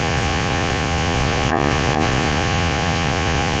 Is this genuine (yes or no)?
no